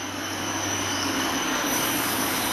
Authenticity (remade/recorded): remade